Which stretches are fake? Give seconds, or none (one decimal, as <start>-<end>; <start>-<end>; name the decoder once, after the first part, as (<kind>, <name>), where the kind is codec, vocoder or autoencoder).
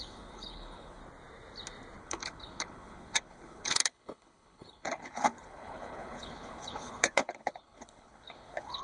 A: 0.0-1.0 (codec, HILCodec); 2.0-8.8